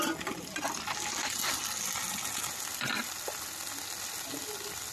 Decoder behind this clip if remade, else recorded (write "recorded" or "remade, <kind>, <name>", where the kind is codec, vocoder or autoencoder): recorded